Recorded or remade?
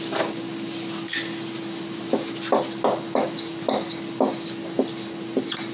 recorded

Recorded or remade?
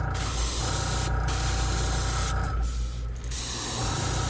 recorded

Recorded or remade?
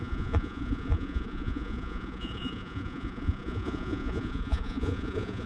remade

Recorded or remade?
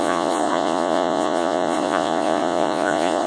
remade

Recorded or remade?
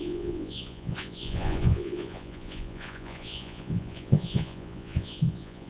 remade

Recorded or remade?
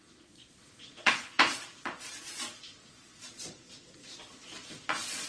remade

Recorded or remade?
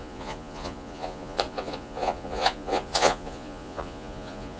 remade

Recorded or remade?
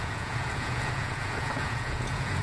remade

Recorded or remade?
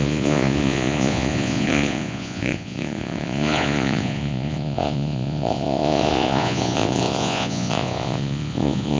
remade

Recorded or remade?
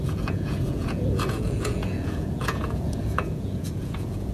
remade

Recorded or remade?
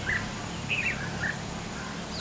recorded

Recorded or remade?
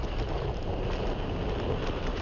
recorded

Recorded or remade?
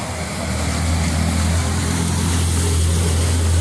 recorded